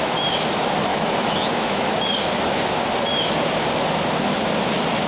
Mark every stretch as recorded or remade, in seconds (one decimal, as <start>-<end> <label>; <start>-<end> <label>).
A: 0.0-0.9 recorded; 0.9-2.1 remade; 2.1-5.1 recorded